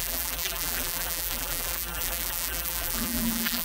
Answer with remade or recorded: remade